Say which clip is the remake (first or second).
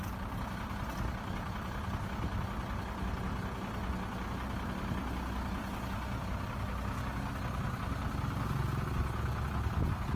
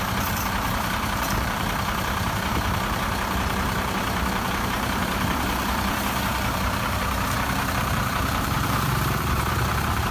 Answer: second